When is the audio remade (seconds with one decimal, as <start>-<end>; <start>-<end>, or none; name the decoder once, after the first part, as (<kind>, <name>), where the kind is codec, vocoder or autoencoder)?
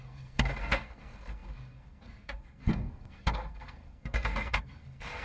0.0-5.2 (codec, SNAC)